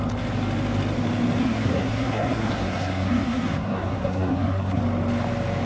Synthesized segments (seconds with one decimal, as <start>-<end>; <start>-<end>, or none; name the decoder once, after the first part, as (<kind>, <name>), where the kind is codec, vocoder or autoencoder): 1.4-4.8 (codec, SNAC)